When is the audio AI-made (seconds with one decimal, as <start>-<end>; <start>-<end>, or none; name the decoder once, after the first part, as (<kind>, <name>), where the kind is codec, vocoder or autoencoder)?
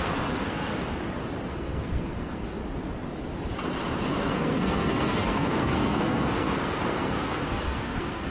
0.0-0.7 (codec, SNAC); 1.5-2.6; 4.2-8.3